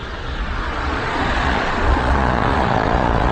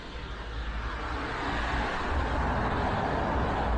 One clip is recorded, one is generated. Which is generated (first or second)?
first